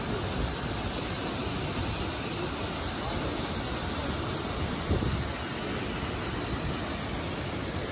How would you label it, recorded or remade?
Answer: recorded